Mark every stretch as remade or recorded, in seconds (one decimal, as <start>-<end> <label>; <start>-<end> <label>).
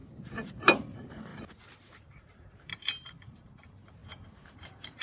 0.0-0.6 recorded; 0.6-1.3 remade; 1.3-2.2 recorded; 2.2-5.0 remade